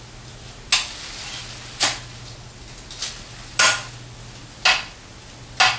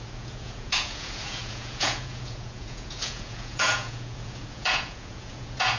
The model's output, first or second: second